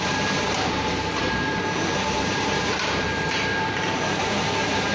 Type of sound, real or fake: fake